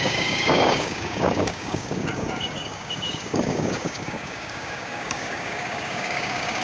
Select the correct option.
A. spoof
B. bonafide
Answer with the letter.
A